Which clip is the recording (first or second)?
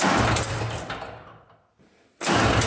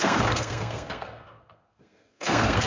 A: first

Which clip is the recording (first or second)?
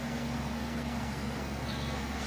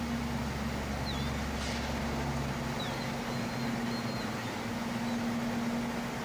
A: second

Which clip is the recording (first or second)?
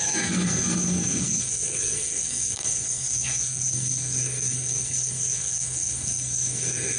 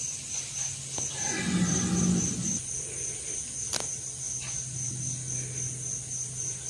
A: second